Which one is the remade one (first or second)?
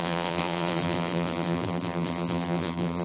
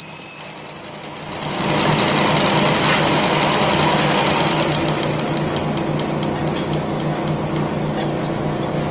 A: first